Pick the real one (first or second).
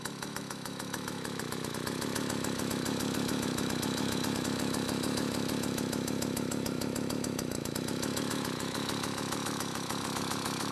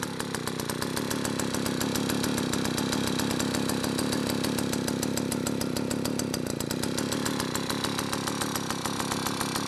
second